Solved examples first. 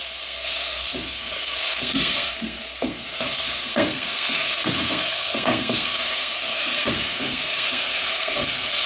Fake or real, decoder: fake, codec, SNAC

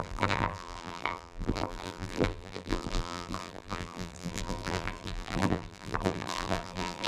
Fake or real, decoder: fake, vocoder, BigVGAN v2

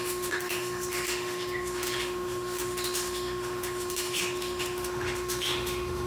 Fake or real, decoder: fake, autoencoder, DAC-VAE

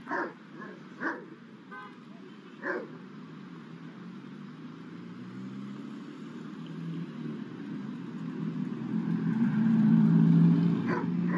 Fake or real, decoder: real